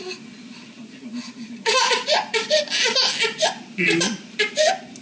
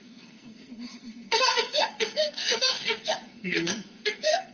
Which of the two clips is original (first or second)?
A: first